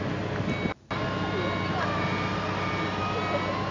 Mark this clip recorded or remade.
recorded